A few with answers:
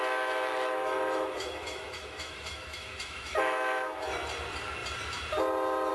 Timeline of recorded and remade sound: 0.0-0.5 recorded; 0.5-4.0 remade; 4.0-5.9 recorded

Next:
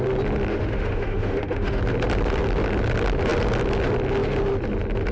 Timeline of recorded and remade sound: 0.0-0.5 recorded; 0.5-1.8 remade; 1.8-5.1 recorded

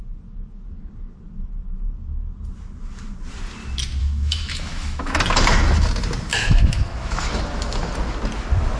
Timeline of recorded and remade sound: 0.0-4.0 recorded; 4.0-5.2 remade; 5.2-6.3 recorded; 6.3-7.4 remade; 7.4-8.8 recorded

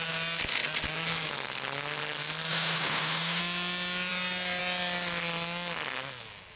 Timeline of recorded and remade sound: 0.0-2.5 recorded; 2.5-3.4 remade; 3.4-6.6 recorded